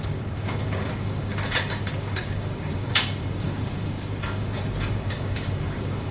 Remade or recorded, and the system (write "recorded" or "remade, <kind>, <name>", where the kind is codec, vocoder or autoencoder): remade, codec, DAC